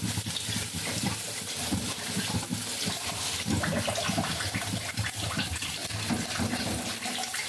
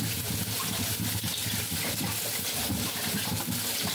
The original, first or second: first